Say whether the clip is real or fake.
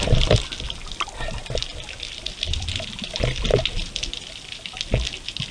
real